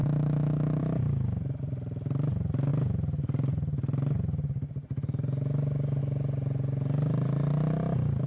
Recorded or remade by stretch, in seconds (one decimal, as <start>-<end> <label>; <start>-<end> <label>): 0.0-0.8 remade; 0.8-8.3 recorded